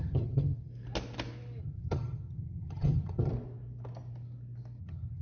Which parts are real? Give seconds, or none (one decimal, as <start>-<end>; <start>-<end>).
0.7-1.6; 3.3-4.8